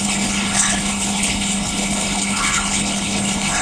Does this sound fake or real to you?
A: fake